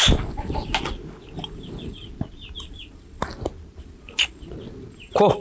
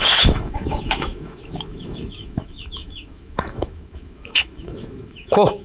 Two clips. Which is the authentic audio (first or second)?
first